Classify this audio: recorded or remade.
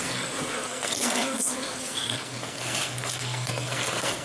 remade